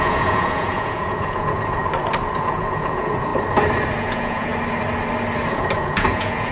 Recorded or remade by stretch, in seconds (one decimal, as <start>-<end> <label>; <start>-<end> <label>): 0.0-1.8 remade; 1.8-2.3 recorded; 2.3-3.3 remade; 3.3-4.0 recorded; 4.0-4.5 remade; 4.5-5.5 recorded; 5.5-6.5 remade